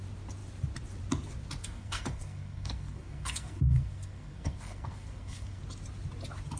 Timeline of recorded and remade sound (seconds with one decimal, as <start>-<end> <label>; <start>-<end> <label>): 0.0-1.6 recorded; 1.6-5.6 remade; 5.6-6.6 recorded